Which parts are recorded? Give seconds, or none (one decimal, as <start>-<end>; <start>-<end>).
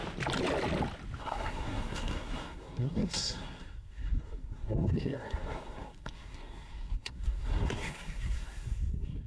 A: 0.0-1.2